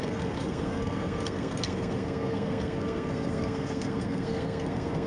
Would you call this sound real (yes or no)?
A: no